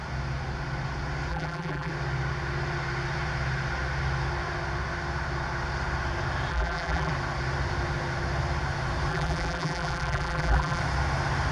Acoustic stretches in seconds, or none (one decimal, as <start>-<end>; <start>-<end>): 0.0-1.3; 1.9-6.5; 7.1-9.1; 10.8-11.5